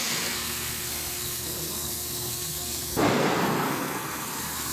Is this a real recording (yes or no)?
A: no